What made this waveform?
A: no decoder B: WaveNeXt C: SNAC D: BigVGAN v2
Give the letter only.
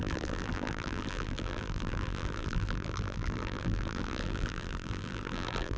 D